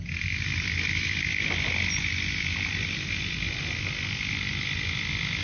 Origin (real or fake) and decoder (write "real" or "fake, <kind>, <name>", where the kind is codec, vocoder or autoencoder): real